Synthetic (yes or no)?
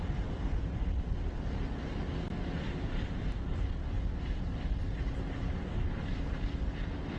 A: no